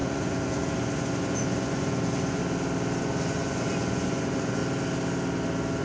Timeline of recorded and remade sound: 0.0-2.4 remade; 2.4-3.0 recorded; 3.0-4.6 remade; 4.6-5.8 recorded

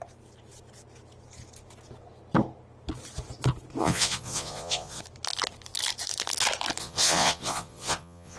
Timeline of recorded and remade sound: 0.0-3.8 recorded; 3.8-5.0 remade; 5.0-6.8 recorded; 6.8-8.4 remade

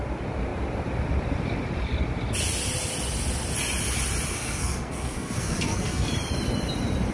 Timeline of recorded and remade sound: 0.0-4.3 recorded; 4.3-6.1 remade; 6.1-7.1 recorded